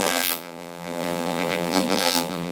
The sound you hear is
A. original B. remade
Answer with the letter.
B